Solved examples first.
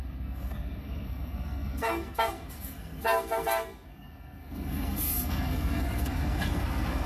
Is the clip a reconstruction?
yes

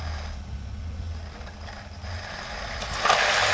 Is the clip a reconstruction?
no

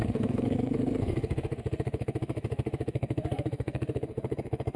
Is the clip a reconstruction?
yes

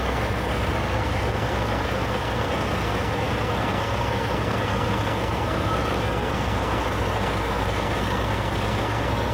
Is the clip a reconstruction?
yes